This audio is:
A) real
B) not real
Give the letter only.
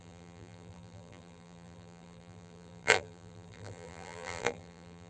B